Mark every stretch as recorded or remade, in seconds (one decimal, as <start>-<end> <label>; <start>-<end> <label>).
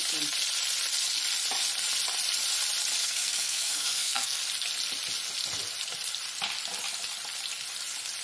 0.0-3.0 recorded; 3.0-4.4 remade; 4.4-8.2 recorded